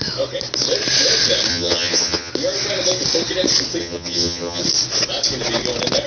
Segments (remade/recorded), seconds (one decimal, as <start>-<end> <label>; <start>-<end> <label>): 0.0-1.5 recorded; 1.5-2.3 remade; 2.3-3.8 recorded; 3.8-4.6 remade; 4.6-6.1 recorded